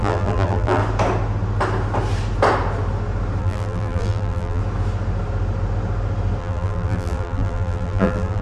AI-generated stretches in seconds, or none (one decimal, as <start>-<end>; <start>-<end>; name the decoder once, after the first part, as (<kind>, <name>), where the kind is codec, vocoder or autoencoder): 0.0-0.8 (vocoder, BigVGAN v2); 3.4-4.6; 6.4-8.4